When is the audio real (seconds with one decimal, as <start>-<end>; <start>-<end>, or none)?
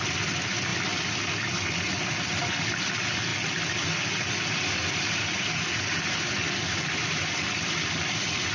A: 0.0-8.5